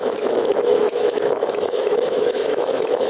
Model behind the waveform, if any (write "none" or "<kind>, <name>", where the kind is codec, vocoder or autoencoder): autoencoder, DAC-VAE